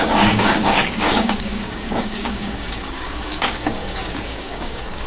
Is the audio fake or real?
fake